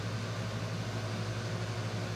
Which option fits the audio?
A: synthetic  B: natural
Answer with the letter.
B